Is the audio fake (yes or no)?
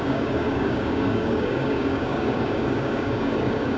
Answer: yes